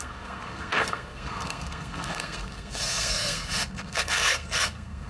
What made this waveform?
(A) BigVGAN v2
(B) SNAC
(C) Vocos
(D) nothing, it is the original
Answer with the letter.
B